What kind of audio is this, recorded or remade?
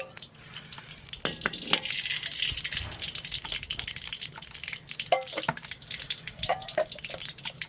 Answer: recorded